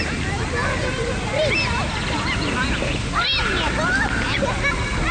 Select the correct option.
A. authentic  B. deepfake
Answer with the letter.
A